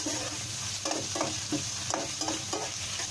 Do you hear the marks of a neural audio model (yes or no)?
no